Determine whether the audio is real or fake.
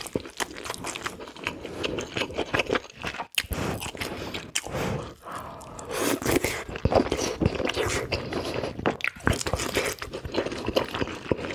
real